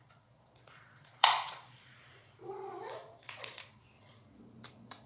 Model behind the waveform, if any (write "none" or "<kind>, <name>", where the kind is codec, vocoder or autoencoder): vocoder, Vocos